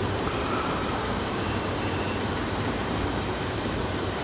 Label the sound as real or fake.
fake